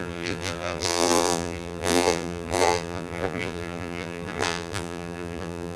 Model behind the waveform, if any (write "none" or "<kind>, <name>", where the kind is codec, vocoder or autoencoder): vocoder, BigVGAN v2